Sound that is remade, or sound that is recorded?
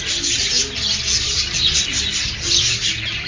recorded